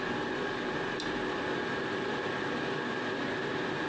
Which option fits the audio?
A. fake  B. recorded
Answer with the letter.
B